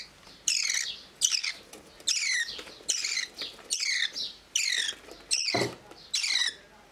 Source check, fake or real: real